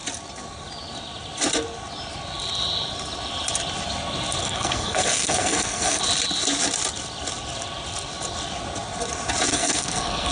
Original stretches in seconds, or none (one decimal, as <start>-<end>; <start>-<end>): 0.0-4.4; 6.0-9.5